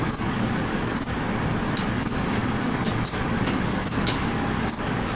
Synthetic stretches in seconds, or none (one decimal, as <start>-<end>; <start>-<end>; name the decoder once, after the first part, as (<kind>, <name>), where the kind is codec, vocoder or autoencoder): 0.0-1.1 (codec, DAC); 1.9-5.1